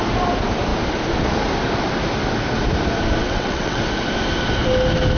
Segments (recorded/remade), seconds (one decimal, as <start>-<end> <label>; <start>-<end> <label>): 0.0-3.2 recorded; 3.2-3.8 remade; 3.8-5.2 recorded